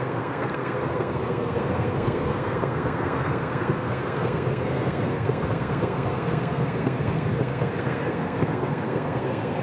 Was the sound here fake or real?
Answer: fake